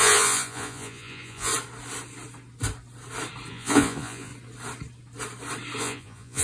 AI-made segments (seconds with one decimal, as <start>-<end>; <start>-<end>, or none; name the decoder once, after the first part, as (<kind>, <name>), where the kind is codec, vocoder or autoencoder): 0.0-1.5 (vocoder, Vocos); 3.5-4.3; 5.8-6.4